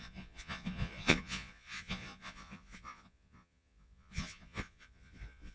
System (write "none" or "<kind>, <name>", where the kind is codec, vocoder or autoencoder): vocoder, Vocos